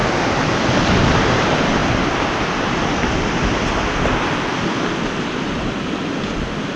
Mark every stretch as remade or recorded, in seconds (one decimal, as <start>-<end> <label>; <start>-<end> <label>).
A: 0.0-6.8 recorded